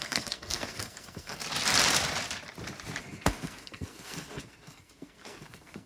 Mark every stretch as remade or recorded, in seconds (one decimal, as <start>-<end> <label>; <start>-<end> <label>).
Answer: 0.0-1.4 remade; 1.4-3.0 recorded; 3.0-5.9 remade